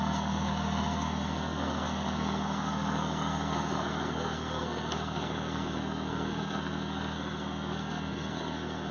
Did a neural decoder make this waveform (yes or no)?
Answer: yes